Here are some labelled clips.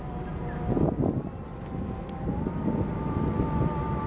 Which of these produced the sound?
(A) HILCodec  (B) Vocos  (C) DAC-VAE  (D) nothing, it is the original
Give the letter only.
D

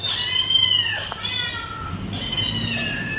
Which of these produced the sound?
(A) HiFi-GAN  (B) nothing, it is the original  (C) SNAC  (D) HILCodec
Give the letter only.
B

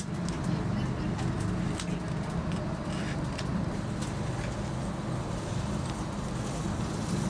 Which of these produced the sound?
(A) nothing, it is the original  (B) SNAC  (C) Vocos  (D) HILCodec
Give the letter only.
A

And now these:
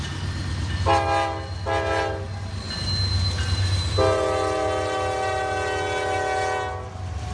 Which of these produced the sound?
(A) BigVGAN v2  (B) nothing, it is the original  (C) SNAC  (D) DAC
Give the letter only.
B